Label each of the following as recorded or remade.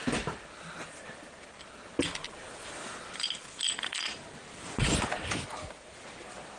recorded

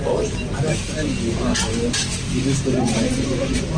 recorded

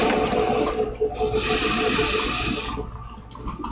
recorded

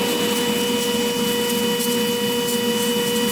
recorded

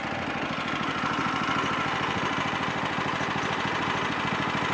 recorded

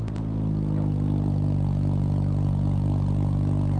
recorded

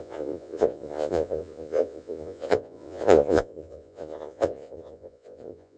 remade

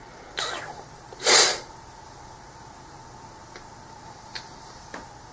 recorded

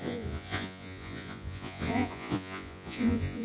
remade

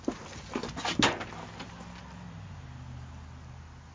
recorded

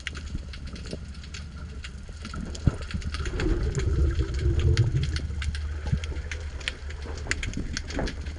recorded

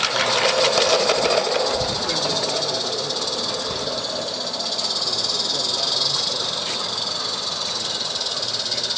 recorded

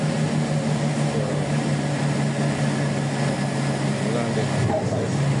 recorded